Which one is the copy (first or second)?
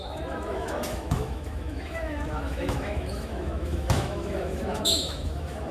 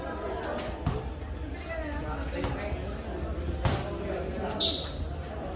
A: first